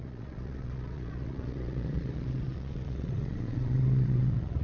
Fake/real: fake